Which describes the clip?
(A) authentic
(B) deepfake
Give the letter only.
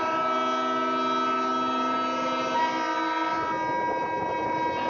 A